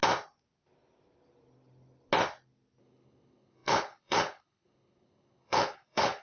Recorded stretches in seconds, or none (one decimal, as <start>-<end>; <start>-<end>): 0.0-2.8